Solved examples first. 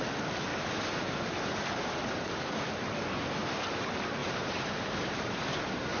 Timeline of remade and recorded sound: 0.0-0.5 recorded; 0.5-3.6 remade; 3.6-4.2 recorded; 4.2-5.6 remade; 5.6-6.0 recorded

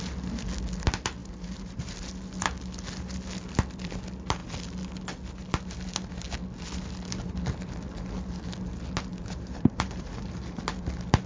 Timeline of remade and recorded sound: 0.0-1.2 recorded; 1.2-2.1 remade; 2.1-9.1 recorded; 9.1-10.6 remade; 10.6-11.3 recorded

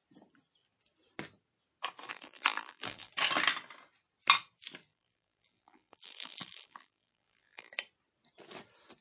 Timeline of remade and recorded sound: 0.0-2.1 recorded; 2.1-3.1 remade; 3.1-4.9 recorded; 4.9-7.7 remade; 7.7-9.0 recorded

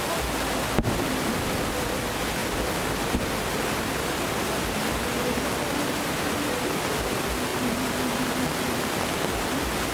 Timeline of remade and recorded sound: 0.0-9.9 recorded

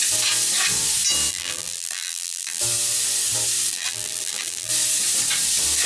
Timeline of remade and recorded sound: 0.0-1.3 recorded; 1.3-2.6 remade; 2.6-3.7 recorded; 3.7-4.7 remade; 4.7-5.9 recorded